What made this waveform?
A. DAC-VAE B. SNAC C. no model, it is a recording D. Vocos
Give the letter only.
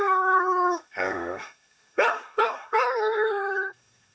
B